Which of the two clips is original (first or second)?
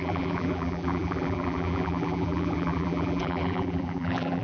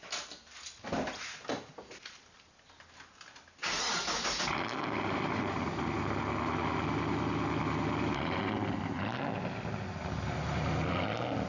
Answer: second